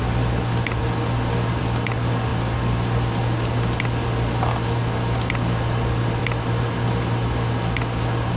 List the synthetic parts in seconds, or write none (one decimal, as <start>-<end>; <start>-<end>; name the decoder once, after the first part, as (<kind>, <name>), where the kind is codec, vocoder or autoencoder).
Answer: 0.0-0.8 (vocoder, BigVGAN v2); 1.6-2.3; 6.2-8.4